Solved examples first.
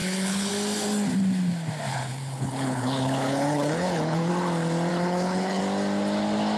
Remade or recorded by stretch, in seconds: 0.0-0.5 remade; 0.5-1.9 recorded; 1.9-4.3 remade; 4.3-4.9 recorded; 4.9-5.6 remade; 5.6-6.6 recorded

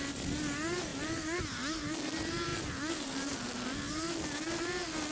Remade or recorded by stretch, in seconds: 0.0-5.1 recorded